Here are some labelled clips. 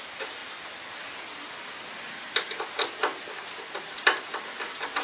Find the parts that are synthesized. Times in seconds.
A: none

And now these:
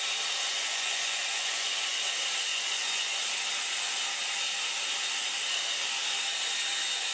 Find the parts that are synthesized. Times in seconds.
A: 0.5-2.0 (vocoder, Vocos); 2.5-3.2

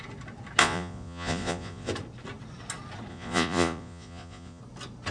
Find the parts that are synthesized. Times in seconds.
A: 0.6-1.9 (vocoder, Vocos); 3.1-4.6

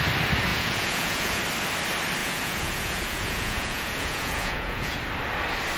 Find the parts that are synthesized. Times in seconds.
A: 0.5-1.4 (vocoder, Vocos); 2.2-5.0

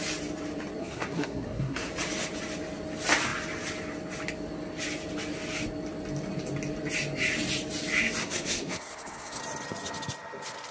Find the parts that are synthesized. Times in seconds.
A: 0.8-1.9 (codec, SNAC); 8.2-9.4

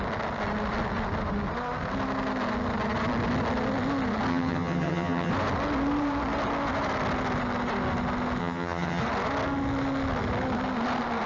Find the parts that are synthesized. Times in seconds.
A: 4.3-5.3 (vocoder, HiFi-GAN); 8.4-9.0